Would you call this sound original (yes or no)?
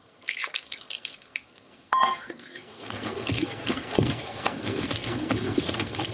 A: no